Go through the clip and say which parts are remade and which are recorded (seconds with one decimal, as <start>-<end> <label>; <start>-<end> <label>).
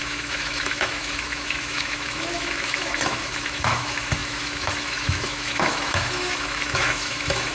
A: 0.0-7.5 remade